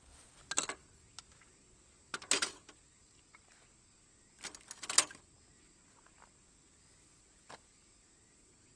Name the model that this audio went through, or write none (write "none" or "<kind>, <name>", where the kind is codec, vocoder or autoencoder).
none